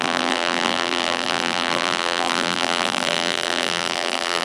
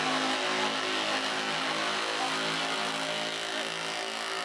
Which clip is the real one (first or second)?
second